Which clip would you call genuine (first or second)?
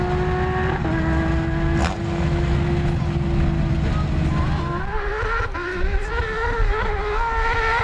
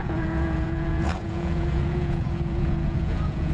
first